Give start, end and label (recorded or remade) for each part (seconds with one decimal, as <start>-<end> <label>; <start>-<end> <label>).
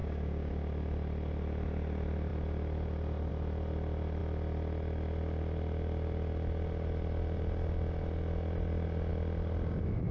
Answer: 0.0-0.5 remade; 0.5-10.1 recorded